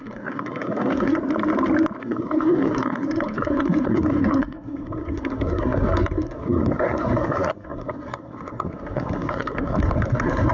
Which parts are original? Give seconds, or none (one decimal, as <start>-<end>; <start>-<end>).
1.2-2.0

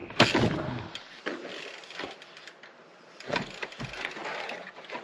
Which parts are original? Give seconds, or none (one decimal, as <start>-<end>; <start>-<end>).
0.0-2.9; 3.7-5.0

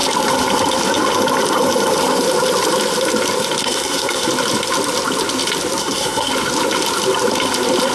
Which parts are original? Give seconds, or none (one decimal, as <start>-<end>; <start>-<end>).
0.0-3.6; 4.3-5.8; 6.3-7.9

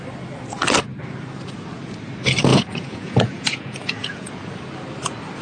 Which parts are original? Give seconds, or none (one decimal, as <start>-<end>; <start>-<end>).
0.0-2.5; 4.3-5.4

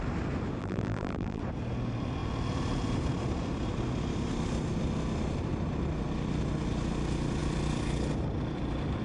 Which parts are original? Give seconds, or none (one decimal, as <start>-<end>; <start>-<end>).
0.0-0.6; 1.4-9.0